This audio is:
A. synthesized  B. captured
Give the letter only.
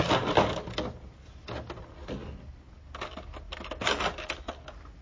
B